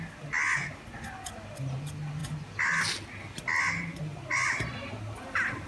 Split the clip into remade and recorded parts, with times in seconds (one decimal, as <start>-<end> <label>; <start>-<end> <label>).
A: 0.0-5.7 recorded